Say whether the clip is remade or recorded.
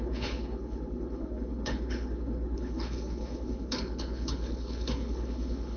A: remade